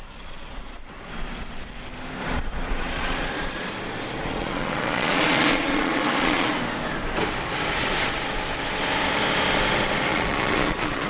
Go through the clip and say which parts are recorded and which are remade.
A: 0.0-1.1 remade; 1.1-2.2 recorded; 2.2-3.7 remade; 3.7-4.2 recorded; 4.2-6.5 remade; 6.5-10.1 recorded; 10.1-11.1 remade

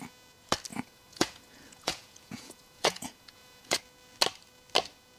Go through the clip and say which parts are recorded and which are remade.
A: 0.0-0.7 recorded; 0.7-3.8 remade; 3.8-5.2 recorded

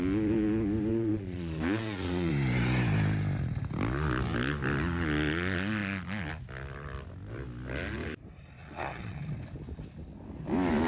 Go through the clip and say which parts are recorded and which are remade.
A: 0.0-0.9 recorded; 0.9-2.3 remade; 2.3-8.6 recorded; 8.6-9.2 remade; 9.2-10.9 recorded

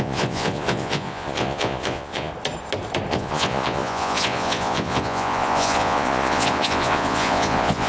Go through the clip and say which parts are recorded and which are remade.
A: 0.0-2.3 remade; 2.3-3.1 recorded; 3.1-7.9 remade